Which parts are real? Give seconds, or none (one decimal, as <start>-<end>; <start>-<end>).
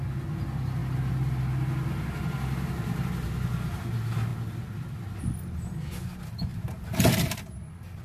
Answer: 0.0-6.5; 7.5-8.0